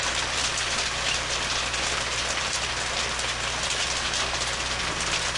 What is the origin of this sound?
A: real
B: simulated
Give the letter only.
A